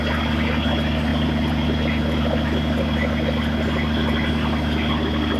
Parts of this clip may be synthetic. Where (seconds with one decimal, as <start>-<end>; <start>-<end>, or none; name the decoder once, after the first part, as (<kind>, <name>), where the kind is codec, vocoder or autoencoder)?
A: none